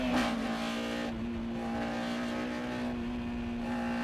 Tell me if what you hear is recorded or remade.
recorded